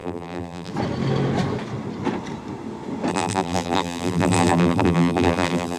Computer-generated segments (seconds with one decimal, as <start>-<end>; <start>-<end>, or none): 0.0-0.7; 3.1-5.8